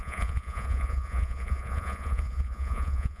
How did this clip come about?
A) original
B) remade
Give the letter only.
B